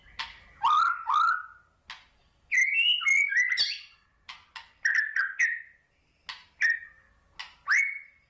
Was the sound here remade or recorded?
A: recorded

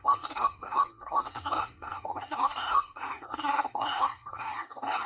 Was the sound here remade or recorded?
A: remade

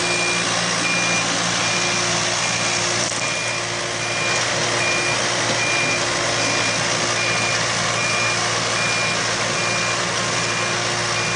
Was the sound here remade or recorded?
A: recorded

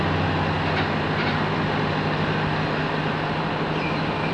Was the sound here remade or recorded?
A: recorded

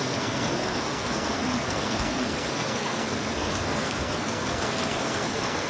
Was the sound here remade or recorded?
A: remade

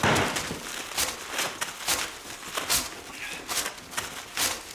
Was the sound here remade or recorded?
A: recorded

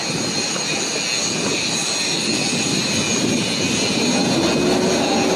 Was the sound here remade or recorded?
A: recorded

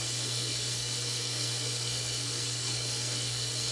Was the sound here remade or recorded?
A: remade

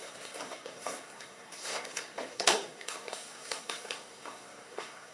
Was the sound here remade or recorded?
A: remade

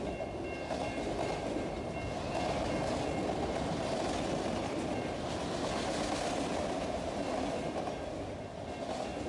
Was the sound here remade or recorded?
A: recorded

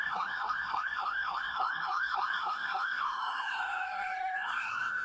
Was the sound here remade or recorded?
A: remade